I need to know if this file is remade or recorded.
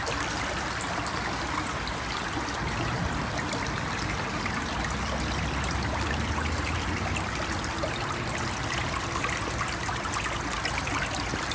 recorded